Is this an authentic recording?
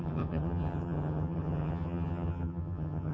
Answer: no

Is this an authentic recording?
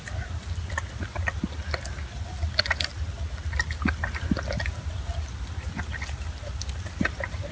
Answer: yes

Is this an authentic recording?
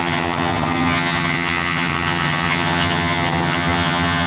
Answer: no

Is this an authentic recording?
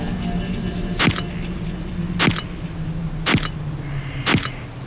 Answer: yes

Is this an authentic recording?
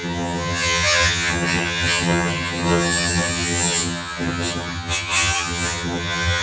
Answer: no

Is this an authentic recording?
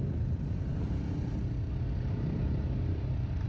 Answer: yes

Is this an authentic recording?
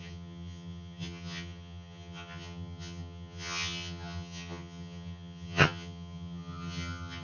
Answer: no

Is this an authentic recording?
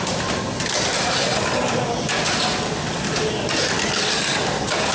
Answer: yes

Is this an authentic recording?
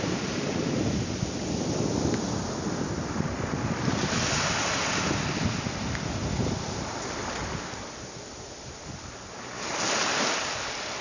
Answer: yes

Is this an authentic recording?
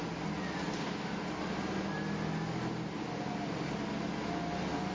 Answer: yes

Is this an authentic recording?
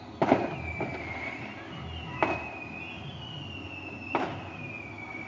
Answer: yes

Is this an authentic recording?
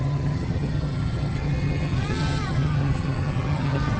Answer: no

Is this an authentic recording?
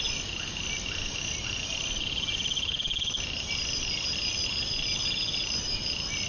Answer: yes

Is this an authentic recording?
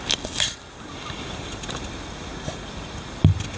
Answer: yes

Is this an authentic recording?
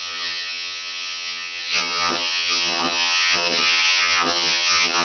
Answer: no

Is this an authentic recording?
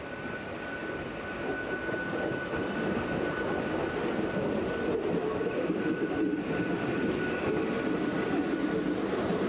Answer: yes